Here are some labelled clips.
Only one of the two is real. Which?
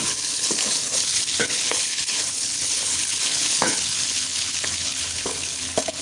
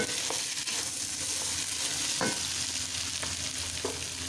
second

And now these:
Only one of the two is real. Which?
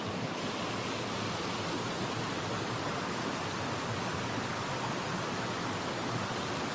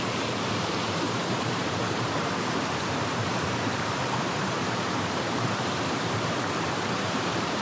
first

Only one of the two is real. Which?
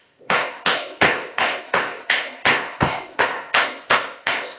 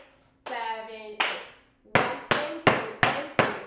second